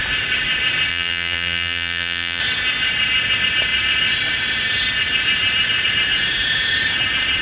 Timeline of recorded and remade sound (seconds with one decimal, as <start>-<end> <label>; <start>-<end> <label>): 0.0-0.9 recorded; 0.9-2.4 remade; 2.4-7.4 recorded